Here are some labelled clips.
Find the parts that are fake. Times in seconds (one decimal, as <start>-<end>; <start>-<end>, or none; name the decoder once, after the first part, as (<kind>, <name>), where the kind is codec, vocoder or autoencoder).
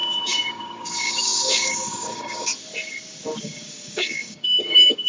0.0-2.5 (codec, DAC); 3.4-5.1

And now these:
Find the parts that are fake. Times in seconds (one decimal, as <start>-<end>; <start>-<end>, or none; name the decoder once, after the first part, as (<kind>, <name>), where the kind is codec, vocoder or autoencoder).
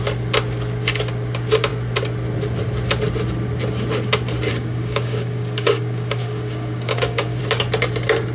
4.5-7.4 (codec, DAC)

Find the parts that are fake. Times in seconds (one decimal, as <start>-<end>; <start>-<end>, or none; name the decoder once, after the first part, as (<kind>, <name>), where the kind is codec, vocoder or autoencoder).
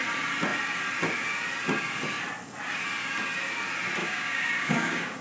4.0-5.2 (codec, DAC)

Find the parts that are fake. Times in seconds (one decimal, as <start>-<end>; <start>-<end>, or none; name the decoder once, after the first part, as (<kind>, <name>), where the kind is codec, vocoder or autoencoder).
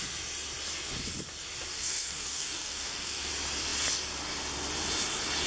1.7-3.3 (codec, DAC)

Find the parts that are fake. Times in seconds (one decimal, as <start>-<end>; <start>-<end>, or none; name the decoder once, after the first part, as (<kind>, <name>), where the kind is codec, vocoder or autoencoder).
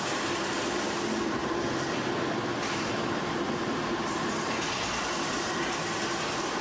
none